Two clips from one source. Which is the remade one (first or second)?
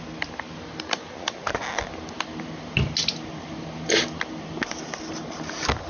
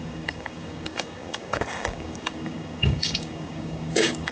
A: second